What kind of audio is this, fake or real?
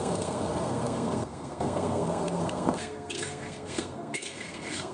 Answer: fake